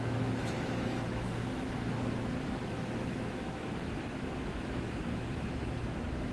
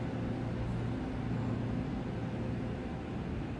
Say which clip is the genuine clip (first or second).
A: second